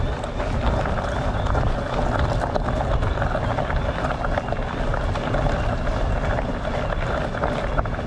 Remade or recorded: recorded